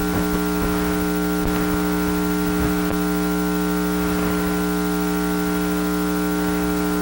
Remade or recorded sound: recorded